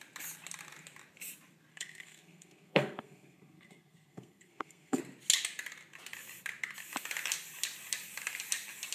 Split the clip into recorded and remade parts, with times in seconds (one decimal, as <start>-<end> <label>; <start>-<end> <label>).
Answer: 0.0-1.7 recorded; 1.7-5.0 remade; 5.0-8.9 recorded